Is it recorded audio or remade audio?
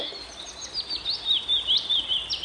recorded